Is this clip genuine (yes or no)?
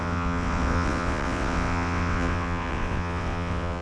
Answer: no